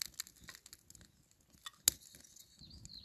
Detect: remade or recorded recorded